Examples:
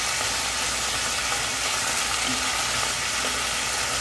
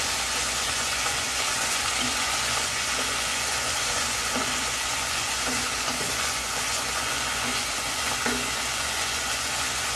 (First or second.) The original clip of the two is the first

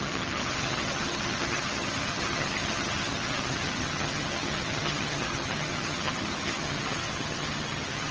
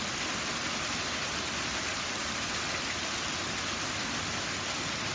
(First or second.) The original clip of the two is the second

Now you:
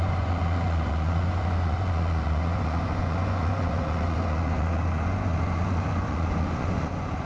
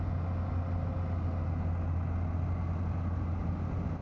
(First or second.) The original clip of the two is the second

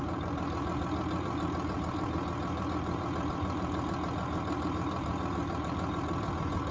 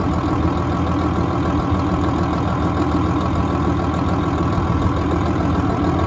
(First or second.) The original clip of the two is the second